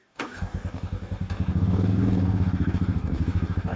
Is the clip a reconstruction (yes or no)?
yes